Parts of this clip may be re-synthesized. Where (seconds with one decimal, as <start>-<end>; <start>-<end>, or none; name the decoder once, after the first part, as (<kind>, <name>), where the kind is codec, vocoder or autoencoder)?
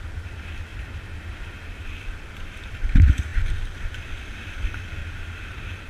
5.0-5.9 (vocoder, BigVGAN v2)